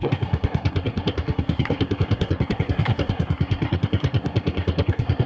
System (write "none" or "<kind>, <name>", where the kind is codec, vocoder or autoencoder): codec, SNAC